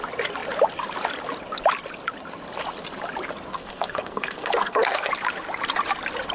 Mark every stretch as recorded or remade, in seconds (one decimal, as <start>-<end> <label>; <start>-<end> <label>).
0.0-3.5 recorded; 3.5-5.1 remade; 5.1-6.3 recorded